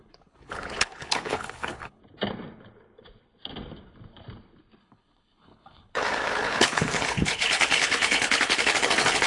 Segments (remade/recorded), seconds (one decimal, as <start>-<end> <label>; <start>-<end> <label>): 0.0-2.0 remade; 2.0-4.8 recorded; 4.8-9.3 remade